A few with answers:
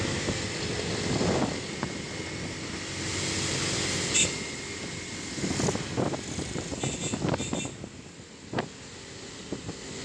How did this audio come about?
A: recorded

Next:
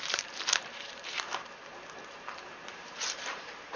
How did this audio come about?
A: remade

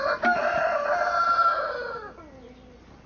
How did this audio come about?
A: recorded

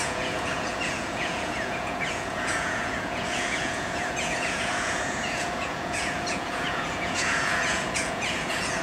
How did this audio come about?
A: remade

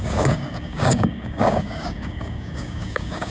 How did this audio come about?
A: remade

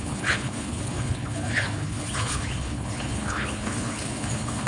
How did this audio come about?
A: remade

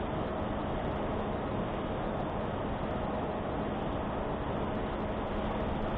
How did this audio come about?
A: recorded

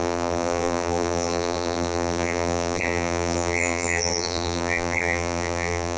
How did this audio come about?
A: remade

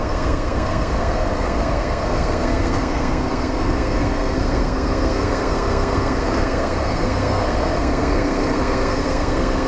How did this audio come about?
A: remade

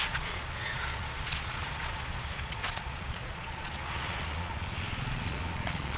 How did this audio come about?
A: remade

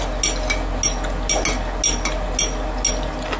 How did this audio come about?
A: recorded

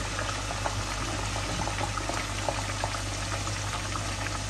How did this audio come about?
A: recorded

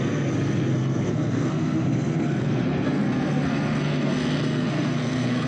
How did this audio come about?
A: remade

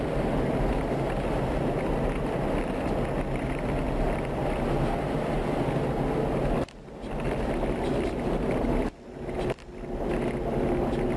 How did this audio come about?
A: recorded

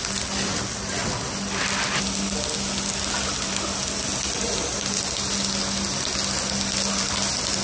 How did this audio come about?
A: recorded